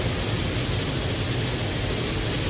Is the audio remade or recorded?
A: recorded